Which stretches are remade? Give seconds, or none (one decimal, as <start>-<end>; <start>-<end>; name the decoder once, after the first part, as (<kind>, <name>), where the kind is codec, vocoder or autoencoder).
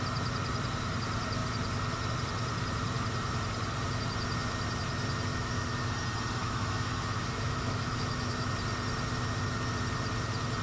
5.3-5.8 (autoencoder, DAC-VAE); 6.4-8.5